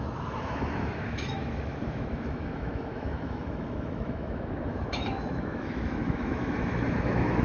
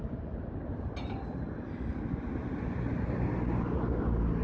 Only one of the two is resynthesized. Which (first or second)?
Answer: first